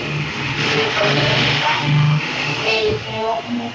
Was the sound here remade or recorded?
remade